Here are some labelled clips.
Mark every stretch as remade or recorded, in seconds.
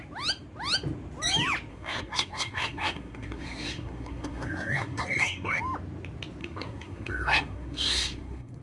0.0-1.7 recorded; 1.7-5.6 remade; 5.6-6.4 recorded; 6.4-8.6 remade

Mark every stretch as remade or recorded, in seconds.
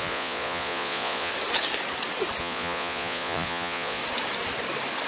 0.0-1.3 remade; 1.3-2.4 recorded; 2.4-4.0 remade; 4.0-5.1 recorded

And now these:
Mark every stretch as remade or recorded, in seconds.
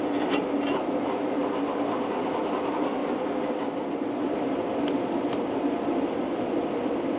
0.0-7.2 recorded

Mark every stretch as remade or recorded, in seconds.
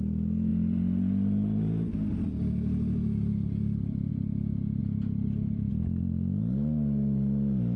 0.0-7.8 recorded